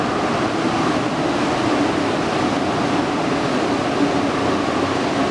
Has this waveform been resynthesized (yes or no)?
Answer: no